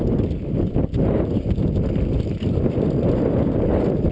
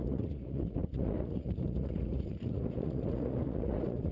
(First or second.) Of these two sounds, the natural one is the first